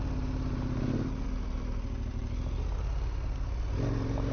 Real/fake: real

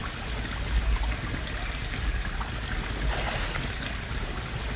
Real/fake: real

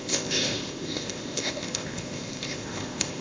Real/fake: fake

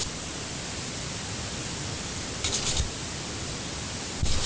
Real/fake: real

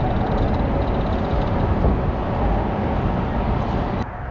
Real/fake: real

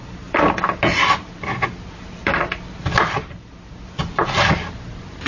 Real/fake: real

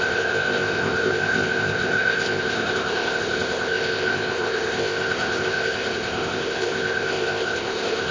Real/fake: fake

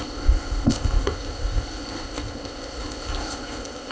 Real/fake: fake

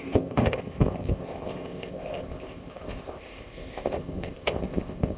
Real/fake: fake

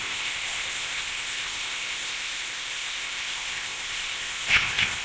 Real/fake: fake